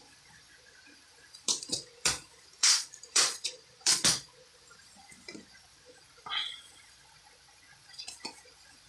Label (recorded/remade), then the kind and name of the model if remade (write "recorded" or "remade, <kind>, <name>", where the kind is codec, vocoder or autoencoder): remade, vocoder, Vocos